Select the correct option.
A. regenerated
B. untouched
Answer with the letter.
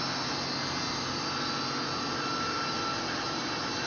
B